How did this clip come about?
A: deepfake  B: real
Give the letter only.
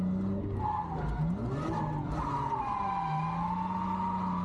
B